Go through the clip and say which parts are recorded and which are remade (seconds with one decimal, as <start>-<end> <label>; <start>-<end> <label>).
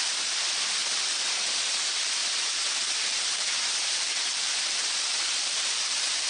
0.0-0.8 recorded; 0.8-1.8 remade; 1.8-2.2 recorded; 2.2-6.3 remade